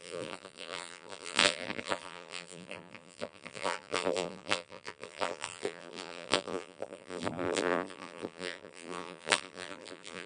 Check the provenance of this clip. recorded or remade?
remade